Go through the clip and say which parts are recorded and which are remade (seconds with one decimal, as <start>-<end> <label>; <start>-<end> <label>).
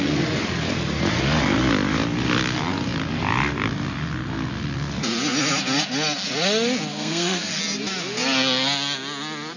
0.0-6.9 recorded; 6.9-7.6 remade; 7.6-9.6 recorded